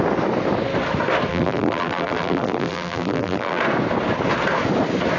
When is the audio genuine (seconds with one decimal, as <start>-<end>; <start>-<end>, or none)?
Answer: 0.0-1.3; 3.6-5.2